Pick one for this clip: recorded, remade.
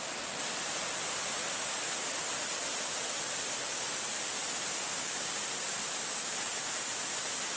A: recorded